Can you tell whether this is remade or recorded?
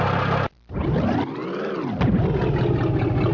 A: recorded